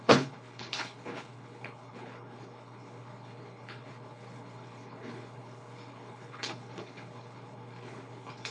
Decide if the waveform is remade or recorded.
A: remade